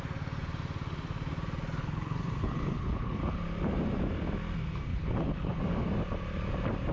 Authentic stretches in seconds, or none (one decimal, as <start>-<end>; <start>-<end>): 0.0-1.8; 3.4-4.9; 5.6-6.9